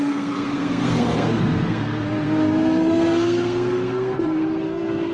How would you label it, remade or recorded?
remade